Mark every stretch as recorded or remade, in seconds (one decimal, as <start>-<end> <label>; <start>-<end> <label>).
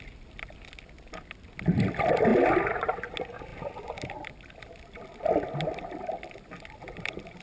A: 0.0-7.4 recorded